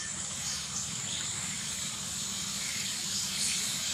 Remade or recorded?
remade